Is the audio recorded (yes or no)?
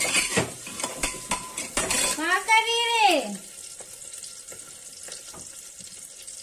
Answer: yes